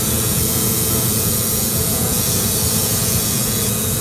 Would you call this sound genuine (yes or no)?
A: no